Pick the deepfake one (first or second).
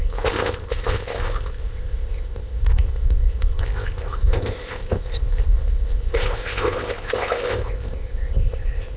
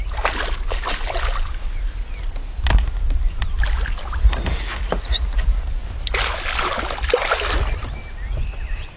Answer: first